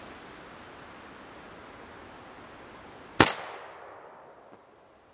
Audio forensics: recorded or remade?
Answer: recorded